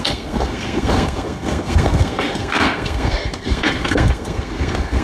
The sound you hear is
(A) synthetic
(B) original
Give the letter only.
A